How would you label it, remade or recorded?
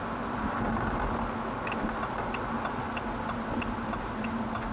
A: recorded